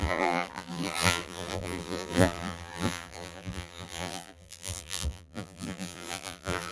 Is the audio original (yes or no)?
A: no